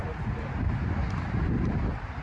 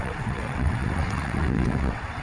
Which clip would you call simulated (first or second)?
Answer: second